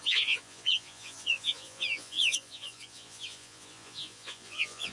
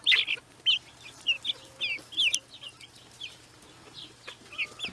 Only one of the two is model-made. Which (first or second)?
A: first